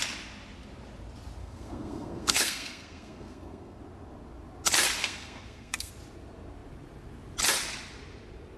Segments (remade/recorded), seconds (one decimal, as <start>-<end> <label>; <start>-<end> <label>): 0.0-1.4 recorded; 1.4-3.8 remade; 3.8-5.0 recorded; 5.0-5.9 remade; 5.9-8.6 recorded

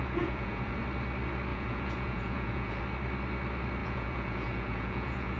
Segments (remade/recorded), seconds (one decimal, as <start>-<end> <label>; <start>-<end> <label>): 0.0-0.8 remade; 0.8-1.5 recorded; 1.5-2.8 remade; 2.8-3.8 recorded; 3.8-5.4 remade

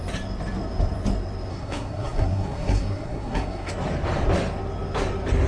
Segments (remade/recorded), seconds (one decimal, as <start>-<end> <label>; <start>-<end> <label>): 0.0-1.5 recorded; 1.5-3.7 remade; 3.7-5.5 recorded

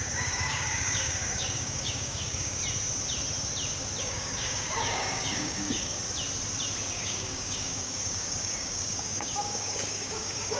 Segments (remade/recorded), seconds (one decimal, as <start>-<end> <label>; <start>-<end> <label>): 0.0-2.6 remade; 2.6-4.0 recorded; 4.0-6.0 remade; 6.0-6.9 recorded; 6.9-10.6 remade